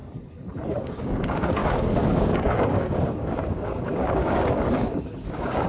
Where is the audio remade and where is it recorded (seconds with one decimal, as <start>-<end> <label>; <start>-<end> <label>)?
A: 0.0-0.8 recorded; 0.8-5.7 remade